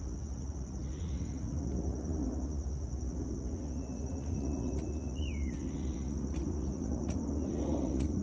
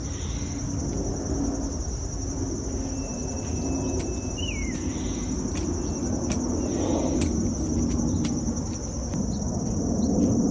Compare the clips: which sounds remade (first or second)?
first